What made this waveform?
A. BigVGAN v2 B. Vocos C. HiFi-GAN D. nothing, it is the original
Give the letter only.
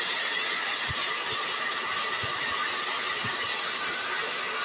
D